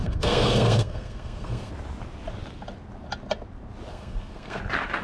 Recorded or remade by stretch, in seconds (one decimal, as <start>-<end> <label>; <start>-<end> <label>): 0.0-1.7 remade; 1.7-3.9 recorded; 3.9-4.6 remade; 4.6-5.0 recorded